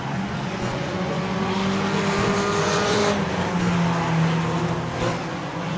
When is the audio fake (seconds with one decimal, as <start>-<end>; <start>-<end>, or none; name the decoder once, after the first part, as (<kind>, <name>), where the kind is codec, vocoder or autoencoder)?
0.0-1.6 (vocoder, Vocos); 2.6-3.0; 5.3-5.8